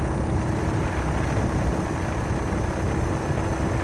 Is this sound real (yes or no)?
yes